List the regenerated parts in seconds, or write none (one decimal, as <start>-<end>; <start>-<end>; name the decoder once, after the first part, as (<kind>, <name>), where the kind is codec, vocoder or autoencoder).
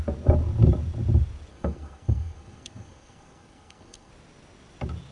1.5-4.1 (codec, SNAC)